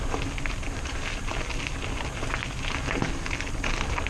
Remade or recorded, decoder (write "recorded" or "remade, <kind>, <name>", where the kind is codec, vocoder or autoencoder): recorded